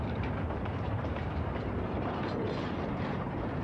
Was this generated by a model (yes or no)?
yes